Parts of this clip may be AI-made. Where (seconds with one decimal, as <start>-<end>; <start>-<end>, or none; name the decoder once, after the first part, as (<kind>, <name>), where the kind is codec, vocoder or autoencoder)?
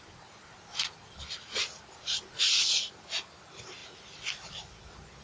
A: none